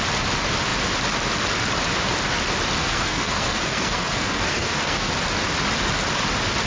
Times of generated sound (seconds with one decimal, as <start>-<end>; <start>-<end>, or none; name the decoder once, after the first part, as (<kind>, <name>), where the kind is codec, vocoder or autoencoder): 2.8-5.1 (codec, SNAC)